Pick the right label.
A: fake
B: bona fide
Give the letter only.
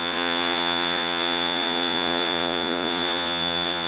A